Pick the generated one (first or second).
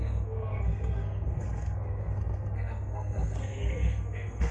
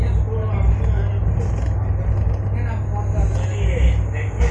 first